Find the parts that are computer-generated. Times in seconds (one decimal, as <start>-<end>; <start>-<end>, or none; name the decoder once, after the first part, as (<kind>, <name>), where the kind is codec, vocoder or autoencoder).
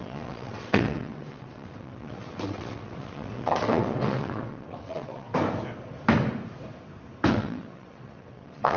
0.0-5.3 (vocoder, WaveNeXt); 7.3-8.8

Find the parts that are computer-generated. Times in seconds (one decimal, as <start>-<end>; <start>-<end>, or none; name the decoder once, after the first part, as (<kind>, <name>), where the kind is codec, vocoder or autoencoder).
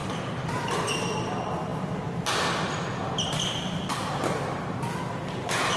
0.0-0.7 (vocoder, BigVGAN v2)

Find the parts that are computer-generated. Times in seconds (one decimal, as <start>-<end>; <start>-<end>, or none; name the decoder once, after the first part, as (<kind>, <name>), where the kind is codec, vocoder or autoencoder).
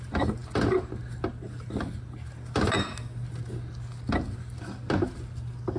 none